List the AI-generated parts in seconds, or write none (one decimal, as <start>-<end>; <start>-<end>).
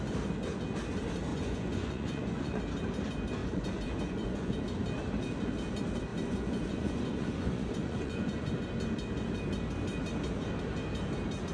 1.3-2.6; 3.4-4.6; 6.1-8.6